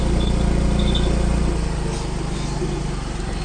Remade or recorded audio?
recorded